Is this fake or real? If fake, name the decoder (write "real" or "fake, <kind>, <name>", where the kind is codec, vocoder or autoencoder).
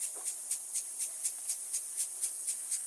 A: fake, vocoder, BigVGAN v2